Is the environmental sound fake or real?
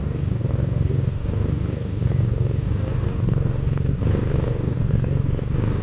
fake